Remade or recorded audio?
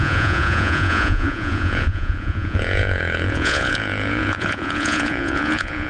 remade